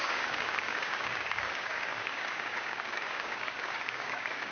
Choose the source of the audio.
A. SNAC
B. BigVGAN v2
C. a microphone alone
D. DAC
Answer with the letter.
D